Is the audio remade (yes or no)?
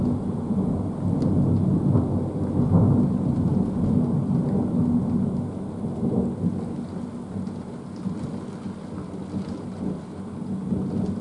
no